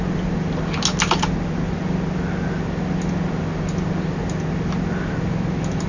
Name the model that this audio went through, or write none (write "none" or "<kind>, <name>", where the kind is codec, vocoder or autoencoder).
none